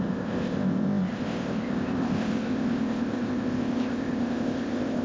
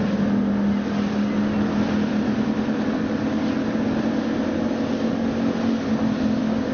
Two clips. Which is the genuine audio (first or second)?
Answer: second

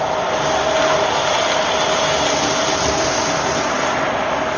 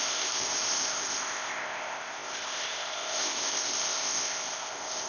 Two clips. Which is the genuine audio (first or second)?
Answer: first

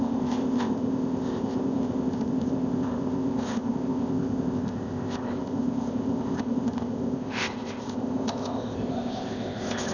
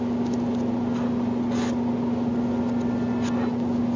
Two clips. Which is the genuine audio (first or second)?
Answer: second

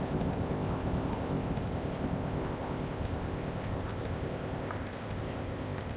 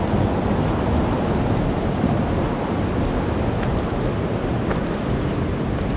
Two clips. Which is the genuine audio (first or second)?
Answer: second